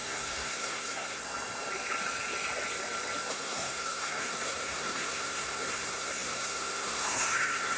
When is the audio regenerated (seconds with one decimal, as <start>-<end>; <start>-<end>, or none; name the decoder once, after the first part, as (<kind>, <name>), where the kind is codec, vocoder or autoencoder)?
0.0-1.2 (codec, SNAC); 3.3-7.8